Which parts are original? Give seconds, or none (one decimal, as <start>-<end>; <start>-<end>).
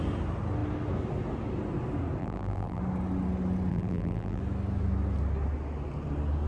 0.0-2.2; 2.8-3.7; 4.4-6.5